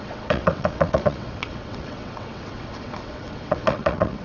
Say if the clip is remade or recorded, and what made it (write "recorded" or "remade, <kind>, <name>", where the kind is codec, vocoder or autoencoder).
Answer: remade, vocoder, WaveNeXt